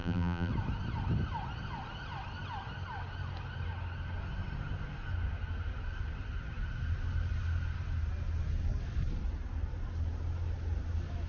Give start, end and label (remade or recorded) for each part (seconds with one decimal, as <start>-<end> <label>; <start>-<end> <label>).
0.0-0.5 remade; 0.5-11.3 recorded